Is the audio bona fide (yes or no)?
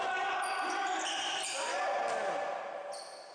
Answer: yes